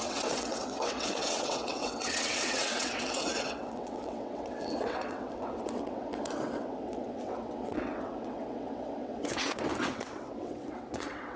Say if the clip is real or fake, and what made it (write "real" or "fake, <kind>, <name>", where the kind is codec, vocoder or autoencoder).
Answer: fake, vocoder, WaveNeXt